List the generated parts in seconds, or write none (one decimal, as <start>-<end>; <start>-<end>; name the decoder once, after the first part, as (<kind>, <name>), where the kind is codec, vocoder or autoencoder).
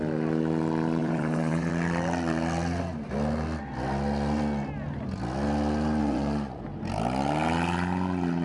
1.0-1.7 (vocoder, Vocos); 6.0-6.6